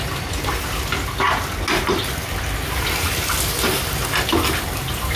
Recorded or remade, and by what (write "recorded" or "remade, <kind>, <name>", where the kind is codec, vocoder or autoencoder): recorded